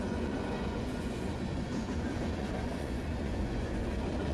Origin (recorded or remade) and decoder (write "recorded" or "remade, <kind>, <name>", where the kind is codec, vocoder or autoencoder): remade, vocoder, Vocos